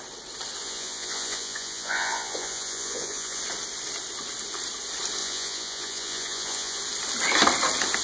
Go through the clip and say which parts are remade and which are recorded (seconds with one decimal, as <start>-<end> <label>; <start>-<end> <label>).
0.0-0.6 recorded; 0.6-3.4 remade; 3.4-5.2 recorded; 5.2-6.8 remade; 6.8-8.0 recorded